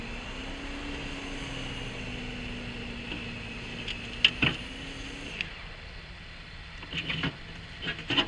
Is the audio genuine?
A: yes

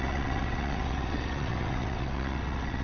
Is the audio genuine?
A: no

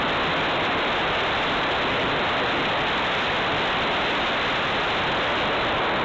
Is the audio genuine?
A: yes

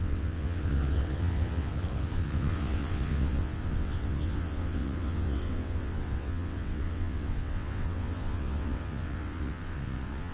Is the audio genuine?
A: no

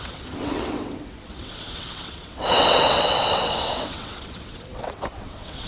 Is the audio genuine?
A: no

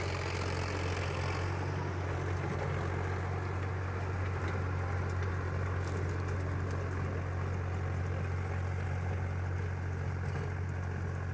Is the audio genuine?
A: yes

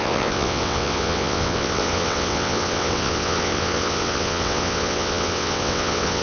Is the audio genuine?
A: no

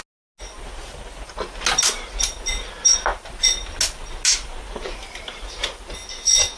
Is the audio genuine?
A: yes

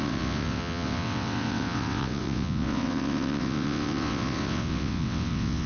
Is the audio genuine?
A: no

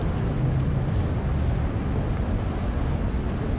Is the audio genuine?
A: yes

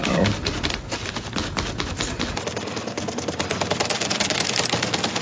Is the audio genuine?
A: yes